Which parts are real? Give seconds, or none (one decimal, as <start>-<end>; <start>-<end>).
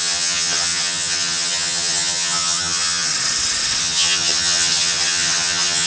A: 3.1-3.8